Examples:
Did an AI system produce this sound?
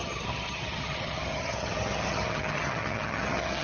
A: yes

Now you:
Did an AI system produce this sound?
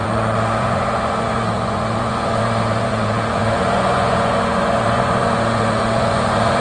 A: yes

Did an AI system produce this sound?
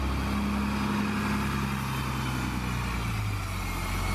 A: no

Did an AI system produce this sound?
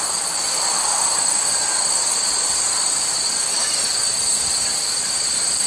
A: no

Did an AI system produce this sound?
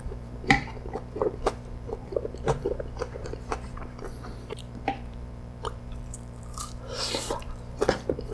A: yes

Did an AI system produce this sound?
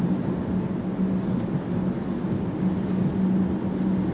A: no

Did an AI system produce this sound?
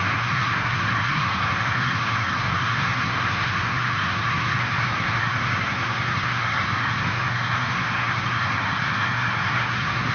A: yes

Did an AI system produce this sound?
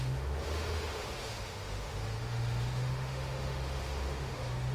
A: yes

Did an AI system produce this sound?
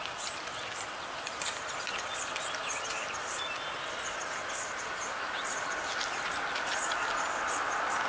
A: no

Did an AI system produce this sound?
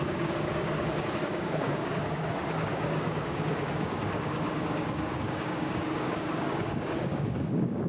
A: yes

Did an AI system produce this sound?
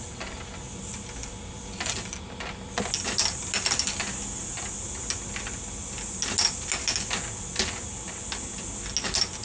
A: no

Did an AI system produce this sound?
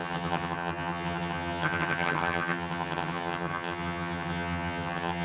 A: yes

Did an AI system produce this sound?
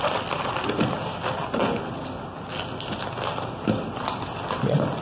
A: no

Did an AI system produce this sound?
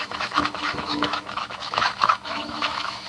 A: yes